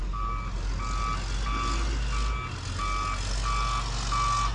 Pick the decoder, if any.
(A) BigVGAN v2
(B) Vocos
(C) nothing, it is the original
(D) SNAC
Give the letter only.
C